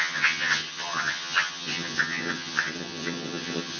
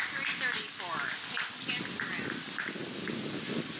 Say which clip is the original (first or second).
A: second